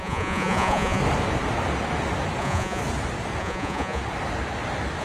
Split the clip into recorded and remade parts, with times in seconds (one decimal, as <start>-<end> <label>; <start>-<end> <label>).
0.0-1.0 remade; 1.0-2.4 recorded; 2.4-2.8 remade; 2.8-3.4 recorded; 3.4-4.0 remade; 4.0-5.0 recorded